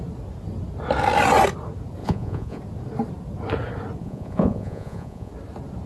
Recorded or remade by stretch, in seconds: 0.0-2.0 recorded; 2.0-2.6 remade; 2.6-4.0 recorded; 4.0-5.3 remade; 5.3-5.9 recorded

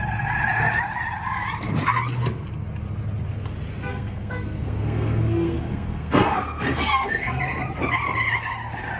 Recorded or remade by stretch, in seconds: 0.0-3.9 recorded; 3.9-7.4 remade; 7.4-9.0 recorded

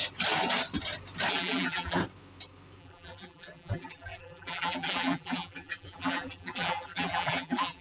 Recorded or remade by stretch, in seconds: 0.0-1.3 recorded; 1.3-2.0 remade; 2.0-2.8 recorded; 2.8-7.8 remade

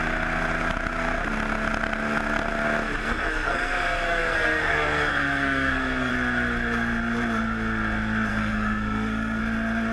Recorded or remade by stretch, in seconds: 0.0-3.0 recorded; 3.0-6.1 remade; 6.1-8.3 recorded; 8.3-9.4 remade; 9.4-9.9 recorded

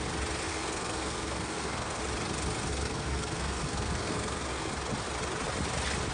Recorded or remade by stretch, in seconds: 0.0-0.5 recorded; 0.5-2.0 remade; 2.0-2.7 recorded; 2.7-4.7 remade; 4.7-6.1 recorded

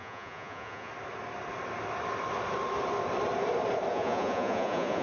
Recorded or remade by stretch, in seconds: 0.0-0.9 remade; 0.9-3.9 recorded; 3.9-5.0 remade